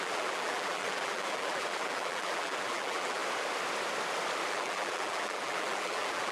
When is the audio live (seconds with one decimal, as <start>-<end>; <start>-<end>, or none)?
3.2-4.5